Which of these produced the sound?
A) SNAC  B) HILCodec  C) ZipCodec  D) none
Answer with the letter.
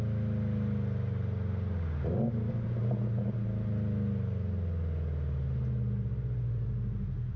D